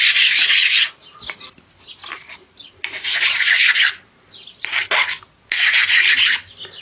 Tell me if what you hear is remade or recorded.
recorded